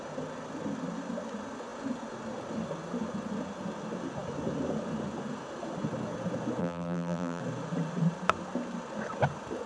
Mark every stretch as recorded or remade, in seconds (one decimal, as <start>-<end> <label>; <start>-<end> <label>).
0.0-6.6 recorded; 6.6-7.4 remade; 7.4-9.7 recorded